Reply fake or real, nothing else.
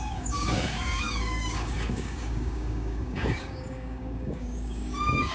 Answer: fake